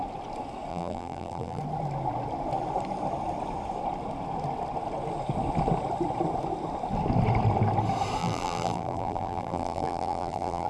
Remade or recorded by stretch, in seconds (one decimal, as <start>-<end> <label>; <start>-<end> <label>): 0.0-0.7 recorded; 0.7-1.6 remade; 1.6-8.2 recorded; 8.2-10.7 remade